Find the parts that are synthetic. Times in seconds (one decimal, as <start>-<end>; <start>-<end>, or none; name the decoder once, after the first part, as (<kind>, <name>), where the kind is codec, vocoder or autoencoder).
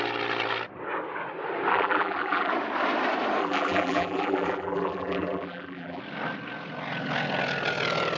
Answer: 1.7-2.5 (vocoder, BigVGAN v2); 3.4-6.0